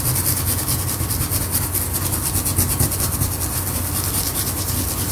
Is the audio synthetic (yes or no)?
no